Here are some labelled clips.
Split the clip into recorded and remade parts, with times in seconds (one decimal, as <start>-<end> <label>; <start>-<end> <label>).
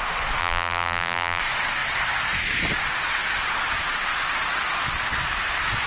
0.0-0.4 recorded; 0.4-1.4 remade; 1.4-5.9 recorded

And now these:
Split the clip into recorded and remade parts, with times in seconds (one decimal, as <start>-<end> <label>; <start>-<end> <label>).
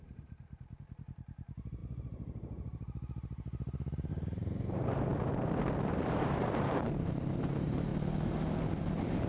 0.0-5.1 remade; 5.1-5.9 recorded; 5.9-7.9 remade; 7.9-8.9 recorded; 8.9-9.3 remade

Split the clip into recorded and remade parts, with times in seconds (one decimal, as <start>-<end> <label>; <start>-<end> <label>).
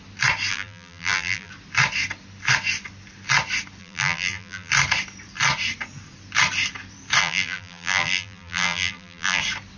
0.0-0.5 recorded; 0.5-1.5 remade; 1.5-3.8 recorded; 3.8-4.7 remade; 4.7-7.2 recorded; 7.2-9.4 remade; 9.4-9.8 recorded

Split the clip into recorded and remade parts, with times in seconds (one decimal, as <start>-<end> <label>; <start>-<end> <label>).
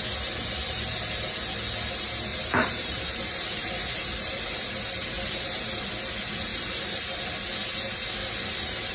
0.0-2.3 recorded; 2.3-5.9 remade; 5.9-6.5 recorded; 6.5-7.2 remade; 7.2-8.9 recorded